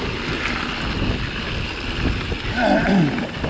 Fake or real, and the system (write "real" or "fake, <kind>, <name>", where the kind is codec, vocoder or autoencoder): real